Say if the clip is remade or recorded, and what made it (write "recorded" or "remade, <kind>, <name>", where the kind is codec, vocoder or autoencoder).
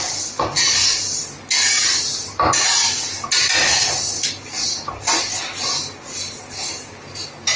recorded